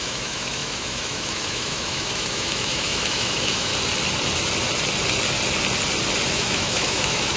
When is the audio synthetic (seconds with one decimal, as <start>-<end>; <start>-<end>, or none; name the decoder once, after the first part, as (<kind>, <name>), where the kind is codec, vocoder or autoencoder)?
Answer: 0.0-3.7 (autoencoder, DAC-VAE); 6.3-7.4

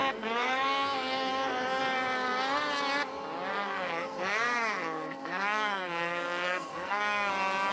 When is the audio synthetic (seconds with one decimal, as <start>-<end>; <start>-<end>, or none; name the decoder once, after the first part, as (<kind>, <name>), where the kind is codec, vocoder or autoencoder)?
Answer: 0.0-1.8 (codec, SNAC); 3.5-7.3

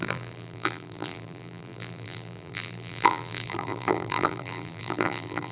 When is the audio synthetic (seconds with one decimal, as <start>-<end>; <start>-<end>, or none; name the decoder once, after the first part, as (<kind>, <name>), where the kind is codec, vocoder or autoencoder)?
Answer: 0.0-5.5 (vocoder, BigVGAN v2)